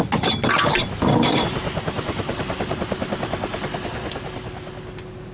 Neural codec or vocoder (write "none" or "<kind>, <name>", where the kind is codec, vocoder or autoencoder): none